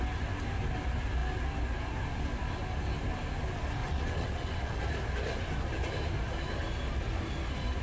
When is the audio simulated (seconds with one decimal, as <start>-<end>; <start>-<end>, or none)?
3.8-4.8